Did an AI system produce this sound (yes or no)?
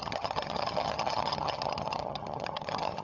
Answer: yes